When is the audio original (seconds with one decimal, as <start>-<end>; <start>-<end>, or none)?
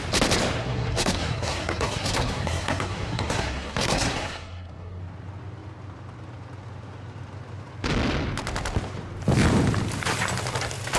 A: 0.0-0.6; 5.0-11.0